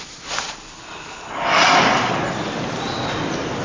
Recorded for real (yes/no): yes